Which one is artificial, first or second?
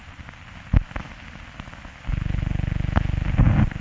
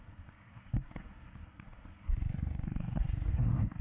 second